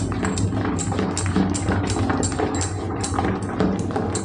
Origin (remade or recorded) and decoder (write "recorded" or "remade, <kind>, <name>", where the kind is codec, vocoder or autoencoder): recorded